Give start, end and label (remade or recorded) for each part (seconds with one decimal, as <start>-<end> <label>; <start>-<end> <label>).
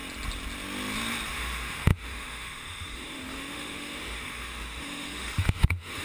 0.0-1.3 recorded; 1.3-6.0 remade